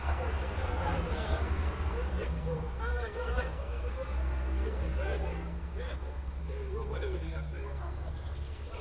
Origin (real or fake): fake